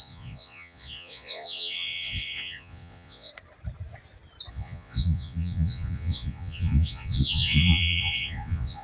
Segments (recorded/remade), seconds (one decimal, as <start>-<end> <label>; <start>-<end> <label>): 0.0-3.3 remade; 3.3-4.5 recorded; 4.5-8.8 remade